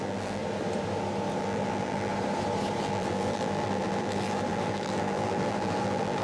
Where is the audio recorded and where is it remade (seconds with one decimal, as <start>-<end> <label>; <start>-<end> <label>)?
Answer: 0.0-0.4 remade; 0.4-1.4 recorded; 1.4-2.1 remade; 2.1-2.8 recorded; 2.8-6.2 remade